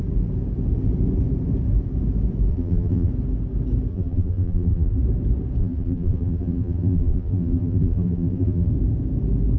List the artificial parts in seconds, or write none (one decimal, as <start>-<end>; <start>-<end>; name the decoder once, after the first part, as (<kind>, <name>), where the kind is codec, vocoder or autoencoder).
2.5-3.1 (vocoder, BigVGAN v2); 3.9-5.0; 5.6-8.7